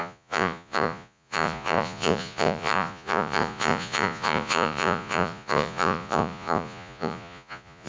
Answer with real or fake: fake